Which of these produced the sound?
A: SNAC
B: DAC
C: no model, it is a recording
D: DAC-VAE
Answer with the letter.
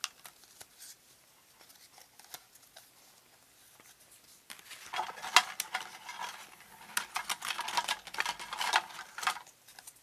C